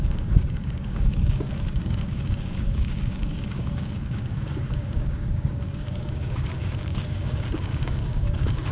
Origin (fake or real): fake